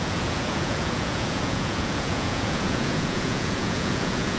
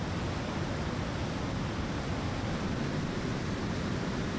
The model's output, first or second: first